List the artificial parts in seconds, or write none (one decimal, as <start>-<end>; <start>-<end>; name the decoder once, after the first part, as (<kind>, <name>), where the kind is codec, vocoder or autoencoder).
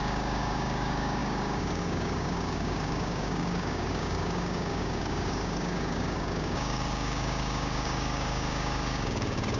0.0-9.6 (codec, DAC)